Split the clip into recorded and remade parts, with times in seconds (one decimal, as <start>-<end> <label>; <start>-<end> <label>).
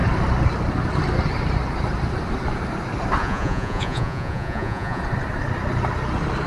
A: 0.0-3.2 recorded; 3.2-5.0 remade; 5.0-6.5 recorded